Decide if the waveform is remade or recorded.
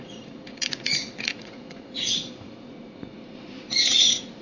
remade